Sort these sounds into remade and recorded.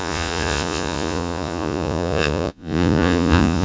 remade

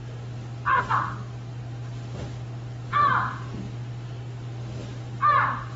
recorded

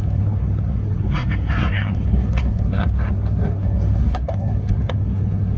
remade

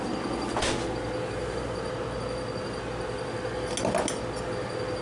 recorded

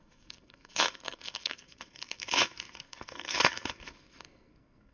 remade